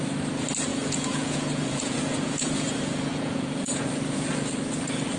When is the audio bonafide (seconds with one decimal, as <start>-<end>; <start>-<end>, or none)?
0.0-0.7; 3.8-5.2